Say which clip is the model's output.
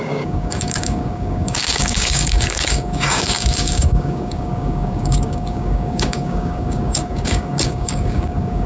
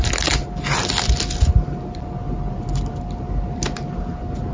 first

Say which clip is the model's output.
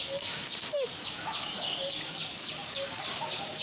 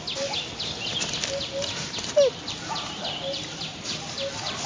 first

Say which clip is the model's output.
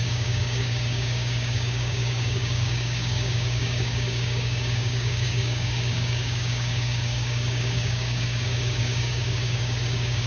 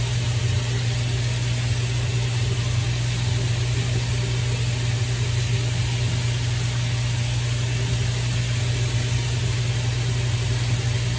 first